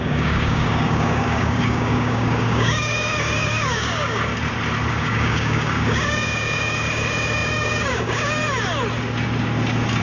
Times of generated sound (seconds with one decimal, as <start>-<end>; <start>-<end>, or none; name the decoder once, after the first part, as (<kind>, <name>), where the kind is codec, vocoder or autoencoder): 0.0-4.3 (codec, DAC); 4.9-8.4